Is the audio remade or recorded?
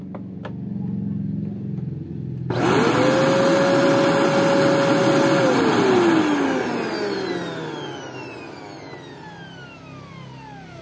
recorded